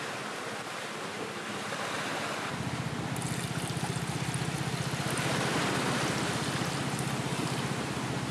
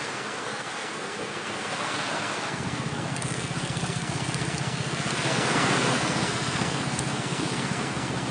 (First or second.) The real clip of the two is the first